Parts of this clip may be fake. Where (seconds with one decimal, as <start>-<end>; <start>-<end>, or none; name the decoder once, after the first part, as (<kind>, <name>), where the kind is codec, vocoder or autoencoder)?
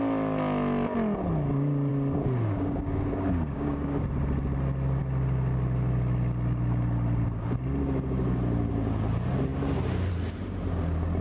1.9-4.0 (codec, DAC)